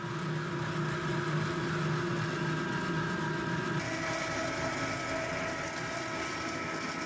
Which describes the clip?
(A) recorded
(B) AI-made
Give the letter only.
A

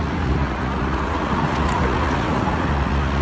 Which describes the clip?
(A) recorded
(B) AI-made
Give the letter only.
B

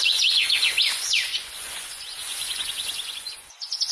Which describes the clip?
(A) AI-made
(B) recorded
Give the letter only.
A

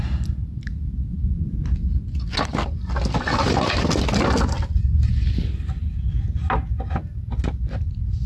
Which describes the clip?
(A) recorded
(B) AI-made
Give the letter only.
A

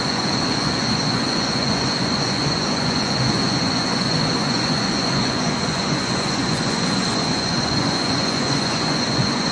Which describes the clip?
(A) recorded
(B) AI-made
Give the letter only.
B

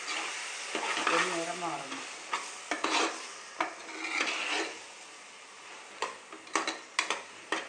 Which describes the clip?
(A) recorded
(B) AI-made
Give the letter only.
A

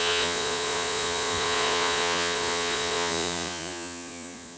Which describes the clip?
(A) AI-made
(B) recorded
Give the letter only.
A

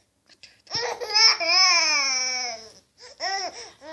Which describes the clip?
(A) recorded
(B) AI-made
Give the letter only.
A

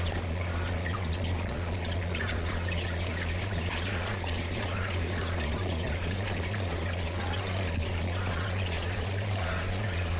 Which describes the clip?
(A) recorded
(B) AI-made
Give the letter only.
B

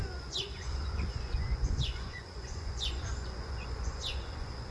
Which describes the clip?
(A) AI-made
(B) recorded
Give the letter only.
A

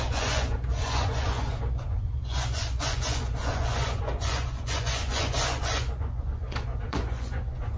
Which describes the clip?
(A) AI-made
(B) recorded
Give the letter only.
A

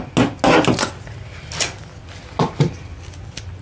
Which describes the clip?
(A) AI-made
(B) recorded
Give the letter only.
B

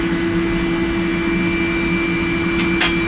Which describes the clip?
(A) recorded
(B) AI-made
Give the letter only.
A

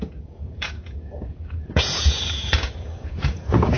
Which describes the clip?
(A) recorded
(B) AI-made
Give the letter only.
B